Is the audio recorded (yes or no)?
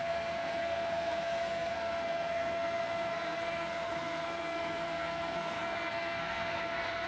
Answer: no